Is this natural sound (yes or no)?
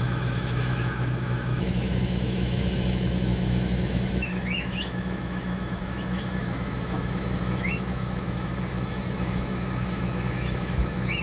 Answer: no